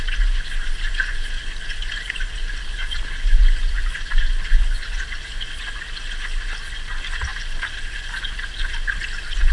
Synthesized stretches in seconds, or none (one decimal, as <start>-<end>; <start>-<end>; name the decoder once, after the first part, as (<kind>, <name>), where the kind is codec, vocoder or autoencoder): none